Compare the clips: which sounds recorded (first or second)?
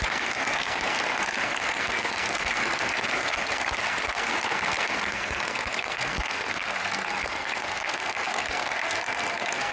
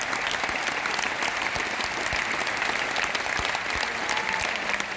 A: second